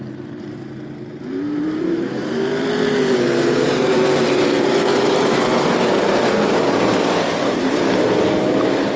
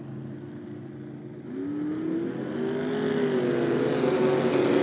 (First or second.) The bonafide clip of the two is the second